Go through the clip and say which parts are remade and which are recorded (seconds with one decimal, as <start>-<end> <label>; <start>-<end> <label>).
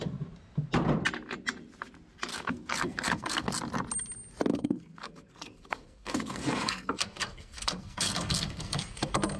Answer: 0.0-2.3 recorded; 2.3-3.5 remade; 3.5-4.5 recorded; 4.5-9.4 remade